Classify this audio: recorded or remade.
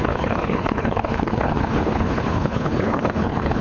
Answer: remade